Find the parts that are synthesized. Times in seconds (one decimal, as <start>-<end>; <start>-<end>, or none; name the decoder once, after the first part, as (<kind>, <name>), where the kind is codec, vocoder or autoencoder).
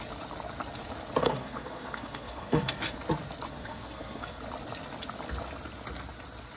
1.2-2.9 (codec, SNAC); 3.5-4.4